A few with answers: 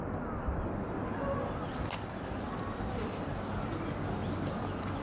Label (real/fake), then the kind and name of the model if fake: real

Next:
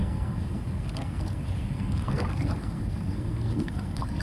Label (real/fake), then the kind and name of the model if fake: fake, codec, SNAC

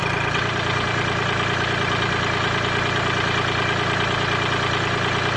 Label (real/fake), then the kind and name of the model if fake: real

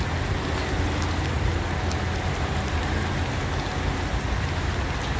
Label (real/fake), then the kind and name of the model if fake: real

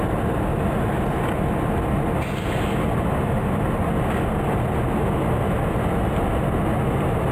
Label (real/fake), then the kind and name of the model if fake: real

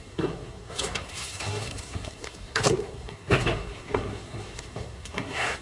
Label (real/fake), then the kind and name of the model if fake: fake, codec, SNAC